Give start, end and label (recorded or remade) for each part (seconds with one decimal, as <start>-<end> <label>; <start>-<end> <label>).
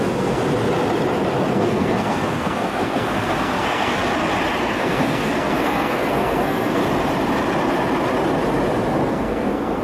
0.0-0.4 remade; 0.4-1.5 recorded; 1.5-4.0 remade; 4.0-4.6 recorded; 4.6-6.8 remade; 6.8-9.1 recorded; 9.1-9.8 remade